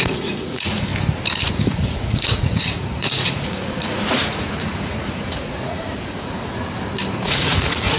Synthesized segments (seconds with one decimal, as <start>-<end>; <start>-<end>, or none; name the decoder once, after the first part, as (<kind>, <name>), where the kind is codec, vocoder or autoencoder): 0.0-0.9 (vocoder, Vocos); 1.5-6.6; 7.2-8.0